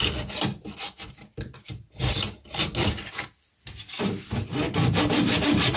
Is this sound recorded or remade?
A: recorded